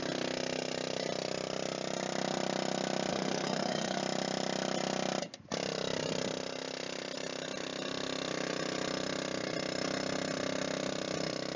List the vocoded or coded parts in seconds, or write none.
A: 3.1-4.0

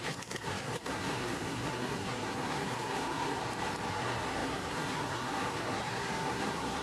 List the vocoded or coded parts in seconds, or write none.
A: 0.0-3.4; 3.9-6.8